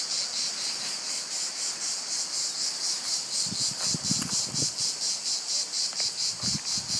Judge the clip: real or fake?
real